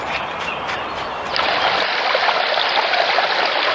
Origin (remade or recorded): recorded